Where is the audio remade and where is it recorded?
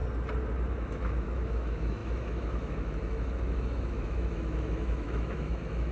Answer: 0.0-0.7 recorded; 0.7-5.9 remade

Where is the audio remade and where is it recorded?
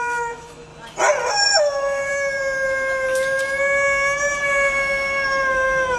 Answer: 0.0-0.7 remade; 0.7-1.3 recorded; 1.3-2.1 remade; 2.1-4.4 recorded; 4.4-6.0 remade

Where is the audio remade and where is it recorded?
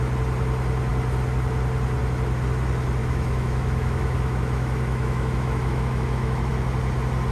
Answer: 0.0-3.0 recorded; 3.0-6.5 remade; 6.5-7.3 recorded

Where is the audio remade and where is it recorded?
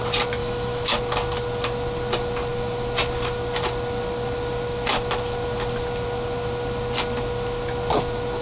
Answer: 0.0-0.4 recorded; 0.4-1.0 remade; 1.0-8.4 recorded